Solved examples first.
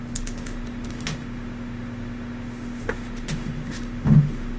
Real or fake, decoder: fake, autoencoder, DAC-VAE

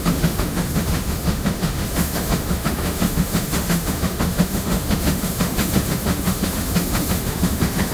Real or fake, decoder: fake, autoencoder, DAC-VAE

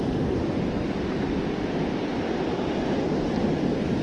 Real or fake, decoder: real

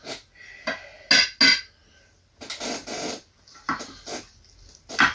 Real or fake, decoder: real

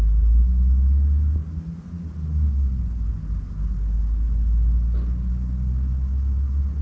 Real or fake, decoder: real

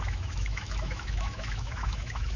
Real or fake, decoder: fake, autoencoder, DAC-VAE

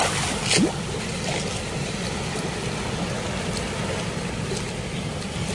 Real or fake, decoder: real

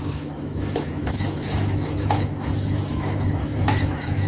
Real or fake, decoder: fake, autoencoder, DAC-VAE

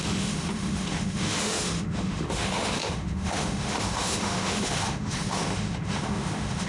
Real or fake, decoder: fake, autoencoder, DAC-VAE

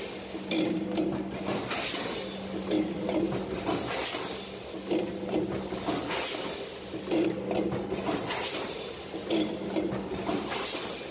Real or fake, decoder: real